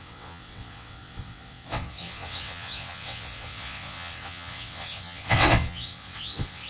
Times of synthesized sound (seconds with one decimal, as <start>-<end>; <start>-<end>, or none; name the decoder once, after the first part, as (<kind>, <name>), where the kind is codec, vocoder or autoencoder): 0.0-6.7 (vocoder, WaveNeXt)